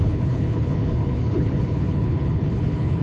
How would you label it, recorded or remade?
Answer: remade